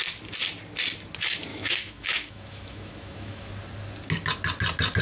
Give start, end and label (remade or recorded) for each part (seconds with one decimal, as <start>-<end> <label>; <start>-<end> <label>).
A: 0.0-1.5 recorded; 1.5-3.5 remade; 3.5-5.0 recorded